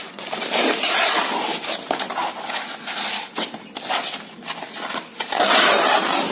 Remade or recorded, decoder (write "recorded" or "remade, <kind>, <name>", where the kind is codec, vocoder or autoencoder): recorded